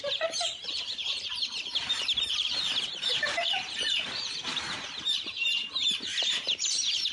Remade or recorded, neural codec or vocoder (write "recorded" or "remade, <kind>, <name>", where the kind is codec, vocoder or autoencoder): remade, vocoder, BigVGAN v2